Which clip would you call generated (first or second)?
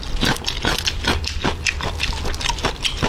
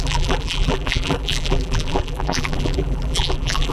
second